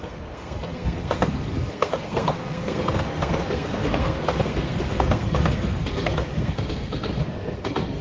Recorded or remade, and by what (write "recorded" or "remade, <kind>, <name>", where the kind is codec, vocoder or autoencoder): remade, codec, SNAC